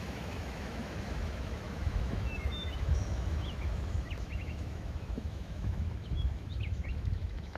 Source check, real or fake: fake